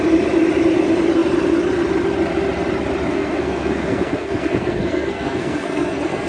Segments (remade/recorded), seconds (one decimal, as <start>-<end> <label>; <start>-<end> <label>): 0.0-3.1 recorded; 3.1-6.3 remade